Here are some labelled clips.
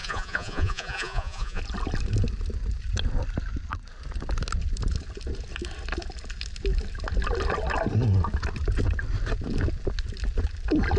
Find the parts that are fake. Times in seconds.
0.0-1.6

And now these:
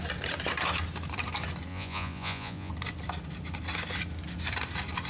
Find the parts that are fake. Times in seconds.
1.7-2.7

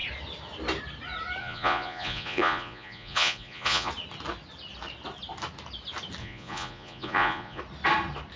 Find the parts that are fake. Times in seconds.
1.4-3.9; 6.2-7.6

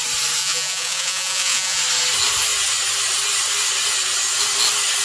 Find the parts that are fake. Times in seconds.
0.4-1.8

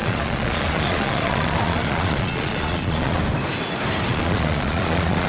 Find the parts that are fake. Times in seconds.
0.0-3.2; 4.1-5.3

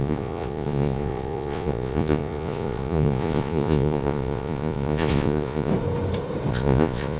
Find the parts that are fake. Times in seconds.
0.0-5.7; 6.5-7.2

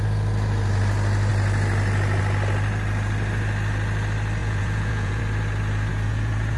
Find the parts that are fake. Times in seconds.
4.4-5.2; 5.9-6.6

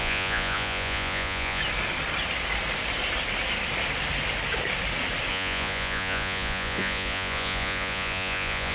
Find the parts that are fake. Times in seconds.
0.0-1.6; 5.3-8.7